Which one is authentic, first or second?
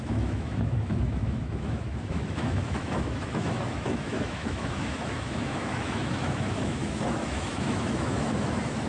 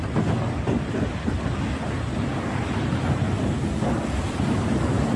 second